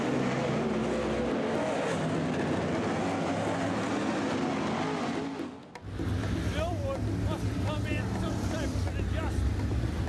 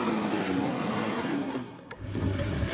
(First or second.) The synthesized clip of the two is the second